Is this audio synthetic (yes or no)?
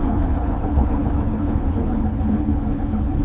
yes